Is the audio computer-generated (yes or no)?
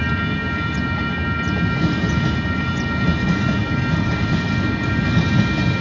no